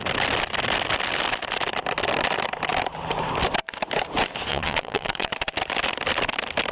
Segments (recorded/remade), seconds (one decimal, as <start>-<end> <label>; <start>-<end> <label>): 0.0-4.5 recorded; 4.5-5.3 remade; 5.3-6.7 recorded